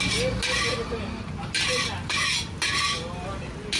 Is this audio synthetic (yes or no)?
no